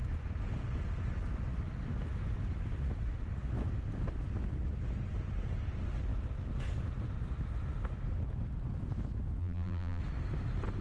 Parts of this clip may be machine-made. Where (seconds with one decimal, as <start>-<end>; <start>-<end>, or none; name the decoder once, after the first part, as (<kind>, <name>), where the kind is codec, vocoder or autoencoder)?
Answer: 9.4-10.0 (vocoder, BigVGAN v2)

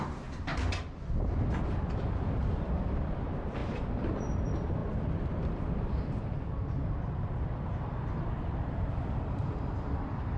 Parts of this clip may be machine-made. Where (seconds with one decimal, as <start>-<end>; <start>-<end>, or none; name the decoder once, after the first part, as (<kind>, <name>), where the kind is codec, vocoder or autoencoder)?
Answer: 0.0-0.5 (vocoder, BigVGAN v2); 1.6-10.4